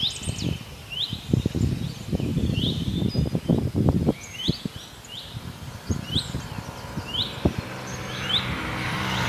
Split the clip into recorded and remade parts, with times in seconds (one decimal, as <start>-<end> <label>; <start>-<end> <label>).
0.0-2.3 recorded; 2.3-3.6 remade; 3.6-9.3 recorded